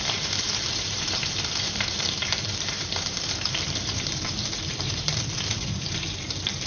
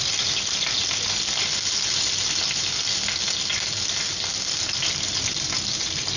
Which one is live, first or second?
second